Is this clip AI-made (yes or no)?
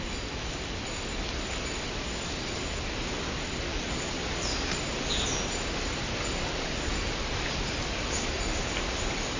no